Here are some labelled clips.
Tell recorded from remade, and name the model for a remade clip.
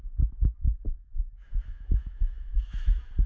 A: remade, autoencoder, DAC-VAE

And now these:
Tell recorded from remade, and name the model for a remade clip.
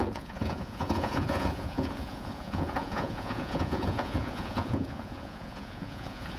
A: remade, vocoder, Vocos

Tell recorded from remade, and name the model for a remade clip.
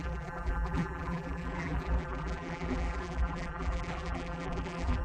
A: remade, vocoder, BigVGAN v2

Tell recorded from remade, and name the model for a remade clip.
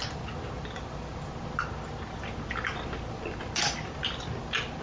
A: recorded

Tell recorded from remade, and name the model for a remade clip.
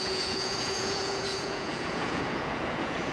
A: remade, vocoder, Vocos